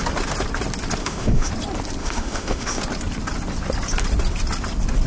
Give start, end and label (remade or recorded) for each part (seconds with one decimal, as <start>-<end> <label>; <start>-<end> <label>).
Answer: 0.0-1.0 recorded; 1.0-1.5 remade; 1.5-2.0 recorded; 2.0-2.8 remade; 2.8-5.1 recorded